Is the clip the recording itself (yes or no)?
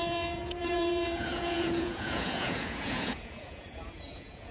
no